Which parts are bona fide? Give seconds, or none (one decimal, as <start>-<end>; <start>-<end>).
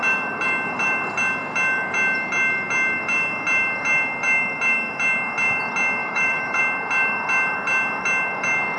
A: 0.0-6.0; 6.6-8.8